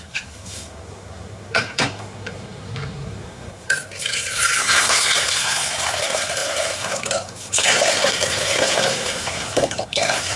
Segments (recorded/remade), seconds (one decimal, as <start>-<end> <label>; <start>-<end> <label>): 0.0-10.4 remade